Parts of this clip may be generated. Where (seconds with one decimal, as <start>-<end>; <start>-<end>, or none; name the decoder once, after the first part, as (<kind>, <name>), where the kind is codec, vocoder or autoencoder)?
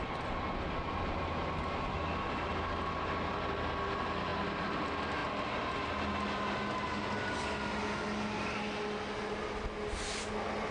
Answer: none